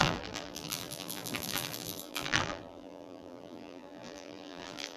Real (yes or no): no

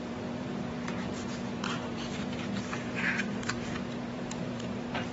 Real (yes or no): no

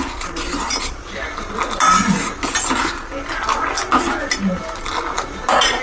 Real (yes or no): yes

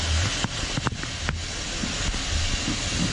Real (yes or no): yes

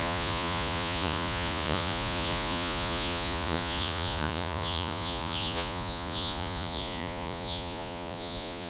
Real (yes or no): no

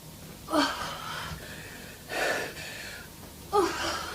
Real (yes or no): yes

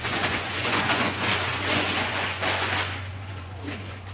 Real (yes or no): no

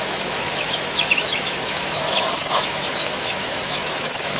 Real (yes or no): no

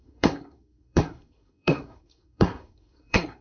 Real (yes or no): no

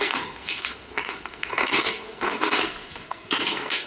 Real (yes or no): no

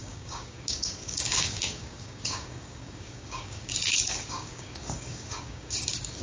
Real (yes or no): no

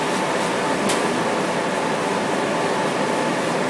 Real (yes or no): yes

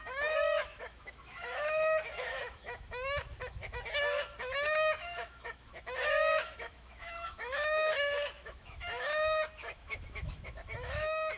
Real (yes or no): no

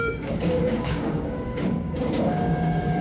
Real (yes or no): no